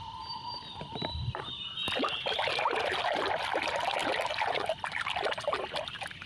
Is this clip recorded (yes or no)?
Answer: yes